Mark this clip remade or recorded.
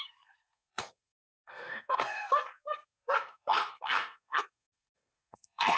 remade